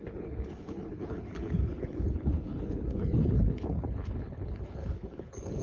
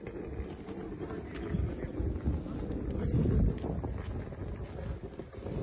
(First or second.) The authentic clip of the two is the second